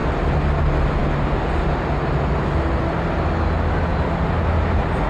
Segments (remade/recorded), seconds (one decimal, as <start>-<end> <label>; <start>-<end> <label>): 0.0-5.1 recorded